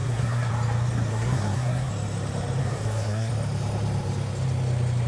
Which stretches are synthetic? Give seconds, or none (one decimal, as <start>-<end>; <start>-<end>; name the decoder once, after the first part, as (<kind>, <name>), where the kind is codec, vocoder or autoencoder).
0.0-0.5 (codec, SNAC); 1.1-1.9; 2.6-3.3